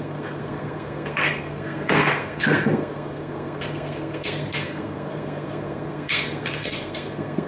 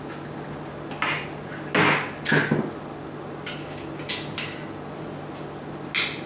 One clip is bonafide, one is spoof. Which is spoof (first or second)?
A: first